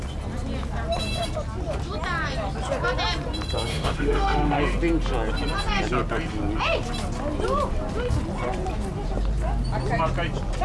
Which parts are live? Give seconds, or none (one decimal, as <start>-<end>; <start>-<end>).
0.0-3.7; 4.6-10.6